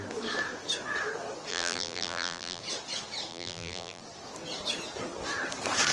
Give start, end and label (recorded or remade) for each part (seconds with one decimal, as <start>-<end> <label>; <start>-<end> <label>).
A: 0.0-1.5 recorded; 1.5-2.6 remade; 2.6-3.3 recorded; 3.3-4.0 remade; 4.0-5.9 recorded